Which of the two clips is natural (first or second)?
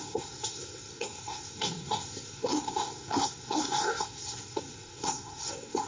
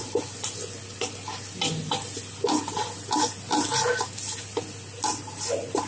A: second